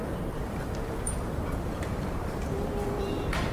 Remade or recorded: remade